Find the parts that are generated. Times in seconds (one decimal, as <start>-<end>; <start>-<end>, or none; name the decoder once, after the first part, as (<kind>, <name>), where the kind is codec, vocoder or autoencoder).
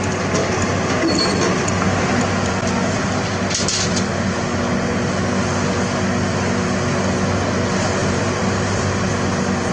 8.0-9.1 (vocoder, BigVGAN v2)